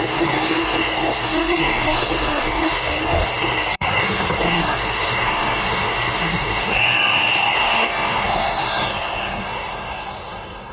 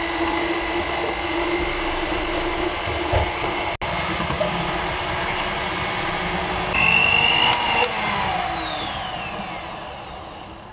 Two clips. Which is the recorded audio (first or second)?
second